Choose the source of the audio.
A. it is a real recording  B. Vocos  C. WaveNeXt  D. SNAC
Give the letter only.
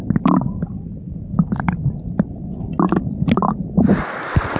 A